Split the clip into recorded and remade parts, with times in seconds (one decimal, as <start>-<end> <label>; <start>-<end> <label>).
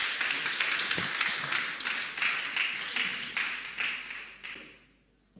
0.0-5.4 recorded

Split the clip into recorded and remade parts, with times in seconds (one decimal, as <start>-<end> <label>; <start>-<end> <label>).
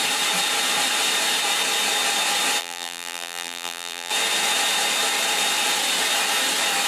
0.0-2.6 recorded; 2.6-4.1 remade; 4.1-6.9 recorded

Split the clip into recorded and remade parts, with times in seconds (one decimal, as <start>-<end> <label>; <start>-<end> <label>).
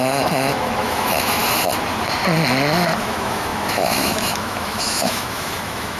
0.0-1.4 remade; 1.4-3.0 recorded; 3.0-6.0 remade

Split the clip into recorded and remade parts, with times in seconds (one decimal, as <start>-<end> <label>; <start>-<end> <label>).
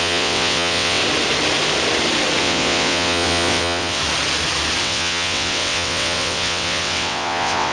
0.0-1.0 remade; 1.0-2.4 recorded; 2.4-4.0 remade; 4.0-4.8 recorded; 4.8-7.7 remade